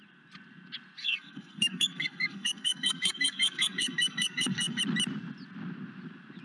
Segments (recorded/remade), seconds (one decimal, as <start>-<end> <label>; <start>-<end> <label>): 0.0-1.0 recorded; 1.0-4.8 remade; 4.8-6.4 recorded